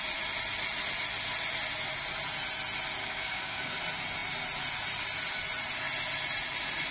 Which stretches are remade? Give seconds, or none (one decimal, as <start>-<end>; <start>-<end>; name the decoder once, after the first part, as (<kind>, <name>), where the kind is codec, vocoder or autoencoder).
3.0-3.8 (codec, DAC)